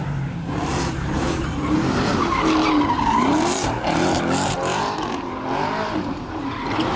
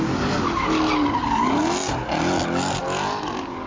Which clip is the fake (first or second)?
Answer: first